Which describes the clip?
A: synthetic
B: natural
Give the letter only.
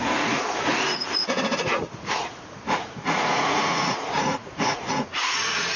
A